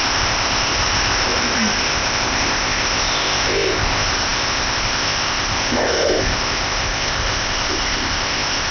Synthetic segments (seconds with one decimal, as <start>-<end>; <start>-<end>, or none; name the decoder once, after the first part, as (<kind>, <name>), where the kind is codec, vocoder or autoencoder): 0.0-8.7 (codec, ZipCodec)